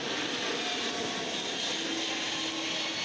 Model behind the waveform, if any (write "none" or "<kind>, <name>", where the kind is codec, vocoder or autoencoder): none